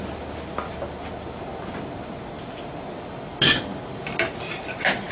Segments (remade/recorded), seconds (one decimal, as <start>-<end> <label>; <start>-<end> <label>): 0.0-5.1 recorded